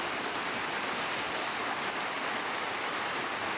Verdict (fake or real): real